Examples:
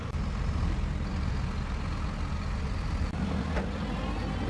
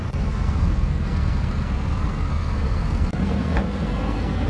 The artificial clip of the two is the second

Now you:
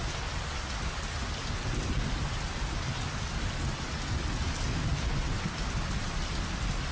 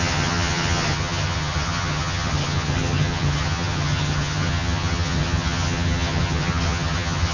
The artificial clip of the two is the second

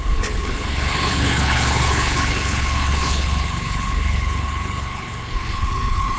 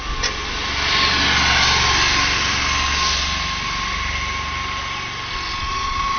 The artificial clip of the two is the first